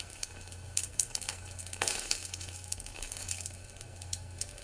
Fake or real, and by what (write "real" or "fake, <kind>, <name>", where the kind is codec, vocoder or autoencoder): fake, codec, SNAC